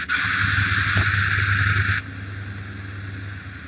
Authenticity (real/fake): real